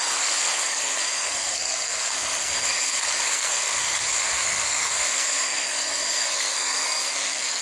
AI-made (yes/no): yes